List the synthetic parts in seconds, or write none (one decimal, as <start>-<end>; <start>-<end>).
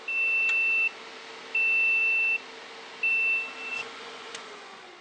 3.7-5.0